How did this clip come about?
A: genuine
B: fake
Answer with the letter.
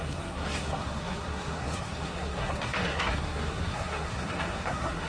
B